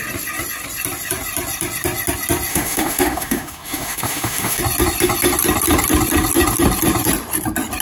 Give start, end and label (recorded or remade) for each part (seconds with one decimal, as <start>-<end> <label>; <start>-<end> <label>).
0.0-2.5 recorded; 2.5-4.6 remade; 4.6-7.8 recorded